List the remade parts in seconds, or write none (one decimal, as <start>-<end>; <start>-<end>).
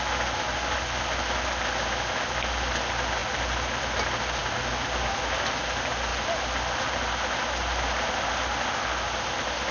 none